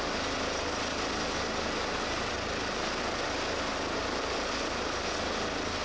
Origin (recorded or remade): recorded